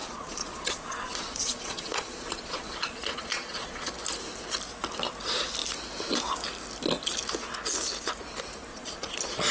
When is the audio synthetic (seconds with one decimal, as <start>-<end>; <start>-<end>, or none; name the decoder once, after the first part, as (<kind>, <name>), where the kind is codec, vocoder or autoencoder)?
0.0-3.9 (vocoder, Vocos); 8.7-9.5